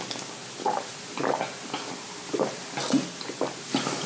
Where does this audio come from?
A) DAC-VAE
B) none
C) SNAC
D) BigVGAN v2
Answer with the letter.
B